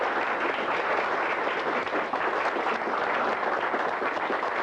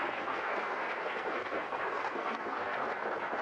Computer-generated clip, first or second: second